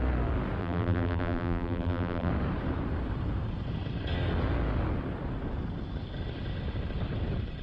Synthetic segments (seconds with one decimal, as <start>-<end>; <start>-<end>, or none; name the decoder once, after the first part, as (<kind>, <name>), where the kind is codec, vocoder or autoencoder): 0.6-2.3 (vocoder, BigVGAN v2)

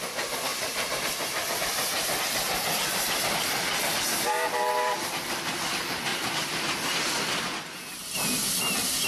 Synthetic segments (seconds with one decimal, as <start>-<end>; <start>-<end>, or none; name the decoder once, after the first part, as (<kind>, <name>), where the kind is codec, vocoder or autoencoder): 0.5-2.2 (vocoder, BigVGAN v2); 6.1-8.0

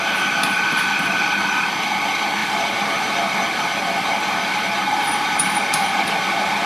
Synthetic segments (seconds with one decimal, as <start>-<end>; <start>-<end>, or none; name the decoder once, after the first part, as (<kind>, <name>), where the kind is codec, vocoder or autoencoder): 2.4-6.7 (vocoder, BigVGAN v2)